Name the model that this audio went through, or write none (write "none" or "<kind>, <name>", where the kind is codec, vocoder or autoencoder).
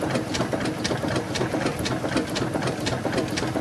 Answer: none